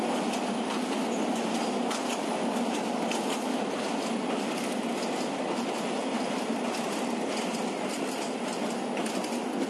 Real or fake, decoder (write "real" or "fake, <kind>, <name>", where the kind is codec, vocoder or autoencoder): real